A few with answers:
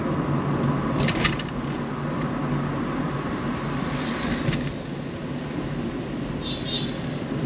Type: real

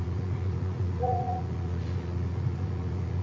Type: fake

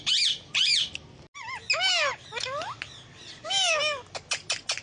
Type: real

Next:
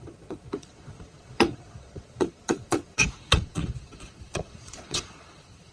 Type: fake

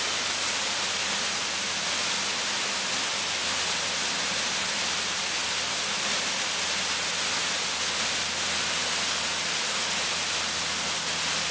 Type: real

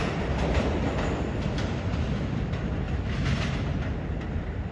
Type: real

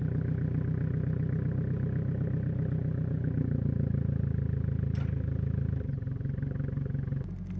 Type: real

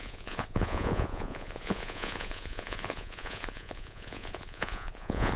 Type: fake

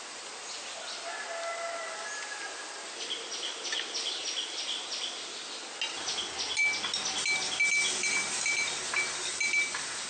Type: real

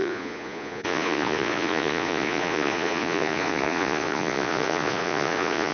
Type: fake